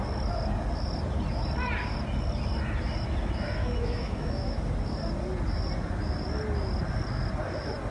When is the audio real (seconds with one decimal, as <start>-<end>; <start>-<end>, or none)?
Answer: 0.0-3.6; 4.6-7.9